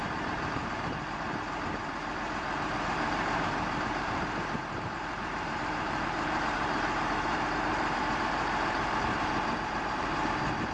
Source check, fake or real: fake